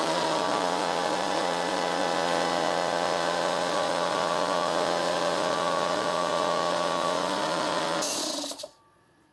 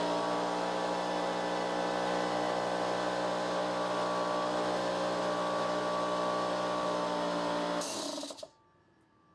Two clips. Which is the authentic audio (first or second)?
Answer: second